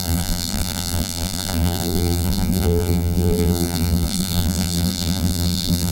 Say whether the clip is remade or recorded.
remade